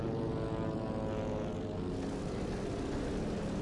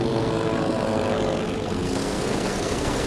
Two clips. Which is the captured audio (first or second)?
first